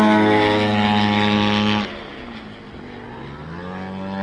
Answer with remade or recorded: recorded